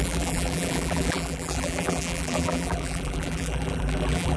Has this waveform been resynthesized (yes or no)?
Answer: yes